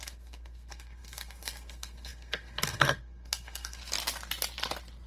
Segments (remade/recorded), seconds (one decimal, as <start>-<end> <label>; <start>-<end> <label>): 0.0-3.8 remade; 3.8-5.1 recorded